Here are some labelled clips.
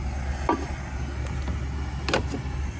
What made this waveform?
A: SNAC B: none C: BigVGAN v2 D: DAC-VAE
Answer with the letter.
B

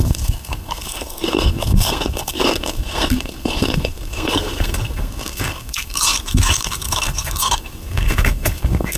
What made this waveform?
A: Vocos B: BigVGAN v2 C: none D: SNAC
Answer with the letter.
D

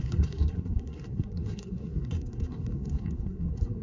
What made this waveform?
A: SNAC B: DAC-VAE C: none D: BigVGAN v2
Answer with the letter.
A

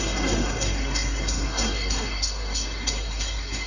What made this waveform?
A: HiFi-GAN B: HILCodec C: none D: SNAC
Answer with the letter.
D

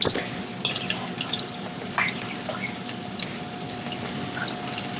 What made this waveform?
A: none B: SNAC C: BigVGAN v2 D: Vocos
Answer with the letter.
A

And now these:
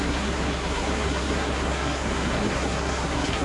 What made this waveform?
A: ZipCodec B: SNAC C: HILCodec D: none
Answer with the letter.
B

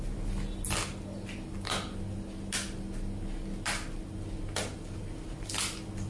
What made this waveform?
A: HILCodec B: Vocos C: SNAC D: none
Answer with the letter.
D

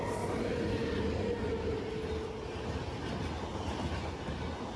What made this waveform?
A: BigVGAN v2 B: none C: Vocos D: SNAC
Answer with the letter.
B